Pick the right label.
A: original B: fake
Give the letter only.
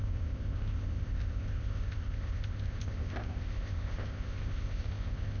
B